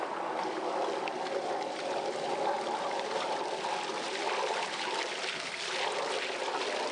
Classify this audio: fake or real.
real